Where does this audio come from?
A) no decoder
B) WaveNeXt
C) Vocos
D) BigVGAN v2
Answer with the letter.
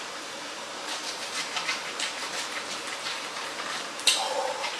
D